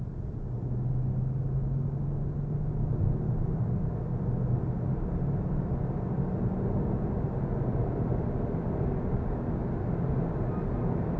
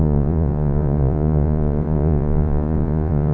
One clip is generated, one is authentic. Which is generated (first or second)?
second